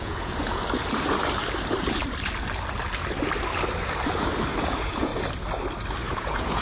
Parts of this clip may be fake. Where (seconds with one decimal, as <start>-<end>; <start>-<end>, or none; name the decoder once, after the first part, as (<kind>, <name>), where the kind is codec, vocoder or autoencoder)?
0.0-0.6 (vocoder, Vocos); 4.6-5.1; 6.0-6.6